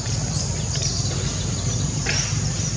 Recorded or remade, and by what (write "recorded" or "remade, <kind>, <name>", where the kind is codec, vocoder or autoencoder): recorded